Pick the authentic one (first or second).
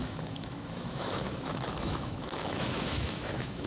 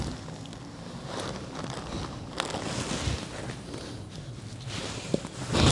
second